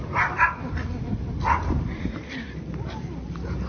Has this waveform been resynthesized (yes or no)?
yes